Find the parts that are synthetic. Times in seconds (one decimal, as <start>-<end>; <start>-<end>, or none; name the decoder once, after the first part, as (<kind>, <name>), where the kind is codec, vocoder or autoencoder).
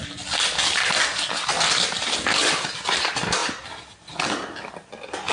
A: none